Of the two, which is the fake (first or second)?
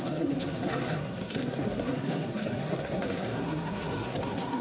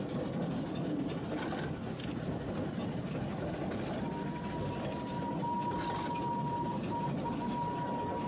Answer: first